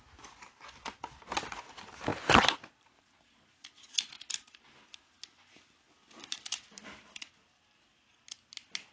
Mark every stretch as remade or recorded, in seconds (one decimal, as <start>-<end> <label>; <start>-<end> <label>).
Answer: 0.0-8.9 recorded